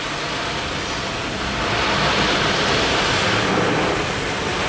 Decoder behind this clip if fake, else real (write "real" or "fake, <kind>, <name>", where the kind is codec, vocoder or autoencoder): real